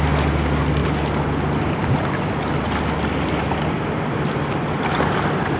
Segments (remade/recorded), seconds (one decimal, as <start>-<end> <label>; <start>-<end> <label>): 0.0-5.6 recorded